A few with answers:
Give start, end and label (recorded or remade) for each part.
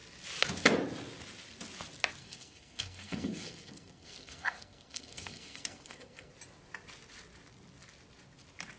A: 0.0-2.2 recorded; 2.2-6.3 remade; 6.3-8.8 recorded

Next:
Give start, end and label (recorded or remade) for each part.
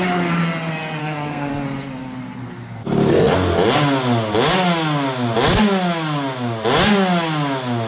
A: 0.0-1.0 recorded; 1.0-1.5 remade; 1.5-7.9 recorded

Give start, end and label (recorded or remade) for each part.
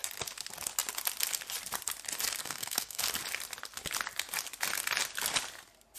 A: 0.0-2.4 recorded; 2.4-3.0 remade; 3.0-6.0 recorded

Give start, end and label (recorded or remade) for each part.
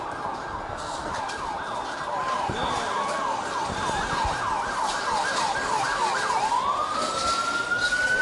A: 0.0-0.6 recorded; 0.6-1.1 remade; 1.1-8.2 recorded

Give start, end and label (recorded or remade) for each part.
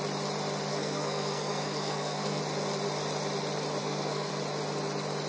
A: 0.0-0.7 recorded; 0.7-2.4 remade; 2.4-3.8 recorded; 3.8-4.3 remade; 4.3-5.3 recorded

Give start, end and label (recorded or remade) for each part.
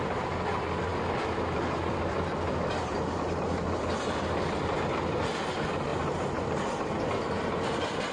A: 0.0-8.1 recorded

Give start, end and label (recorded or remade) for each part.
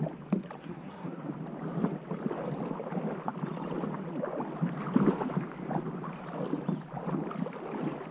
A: 0.0-0.6 recorded; 0.6-1.3 remade; 1.3-8.1 recorded